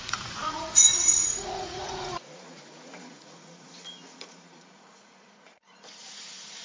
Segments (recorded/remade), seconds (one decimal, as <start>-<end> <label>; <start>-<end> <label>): 0.0-6.6 remade

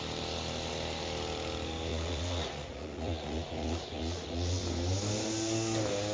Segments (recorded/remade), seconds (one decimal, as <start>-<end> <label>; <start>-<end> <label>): 0.0-1.9 recorded; 1.9-4.6 remade; 4.6-6.1 recorded

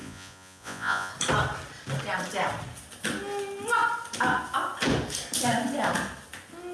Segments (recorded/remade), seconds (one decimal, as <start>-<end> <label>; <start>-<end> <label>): 0.0-1.1 remade; 1.1-6.7 recorded